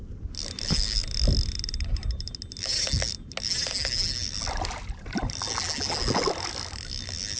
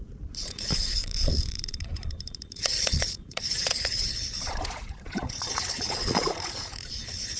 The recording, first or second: first